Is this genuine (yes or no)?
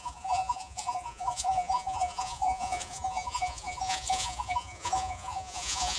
no